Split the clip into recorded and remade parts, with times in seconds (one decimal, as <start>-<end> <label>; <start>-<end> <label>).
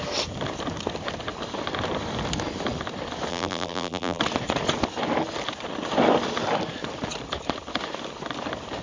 0.0-3.3 recorded; 3.3-4.2 remade; 4.2-8.8 recorded